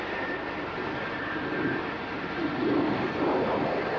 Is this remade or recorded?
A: remade